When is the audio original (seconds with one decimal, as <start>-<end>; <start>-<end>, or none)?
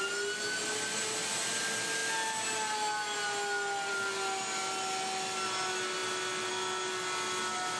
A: 0.0-7.8